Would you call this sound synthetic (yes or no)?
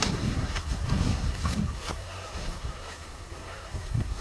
yes